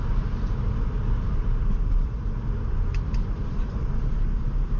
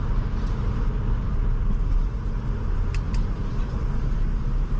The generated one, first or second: first